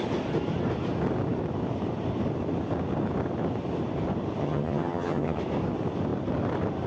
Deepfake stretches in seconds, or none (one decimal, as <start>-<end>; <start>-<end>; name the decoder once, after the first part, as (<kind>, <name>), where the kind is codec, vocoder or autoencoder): 4.4-5.4 (vocoder, HiFi-GAN)